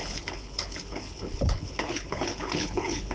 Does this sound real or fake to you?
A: fake